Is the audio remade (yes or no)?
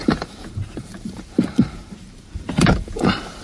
yes